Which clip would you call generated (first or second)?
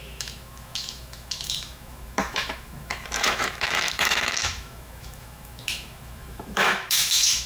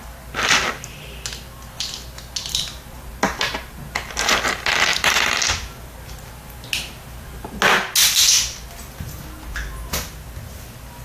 first